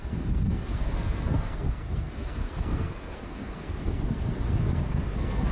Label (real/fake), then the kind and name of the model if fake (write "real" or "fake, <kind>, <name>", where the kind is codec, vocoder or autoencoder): fake, codec, SNAC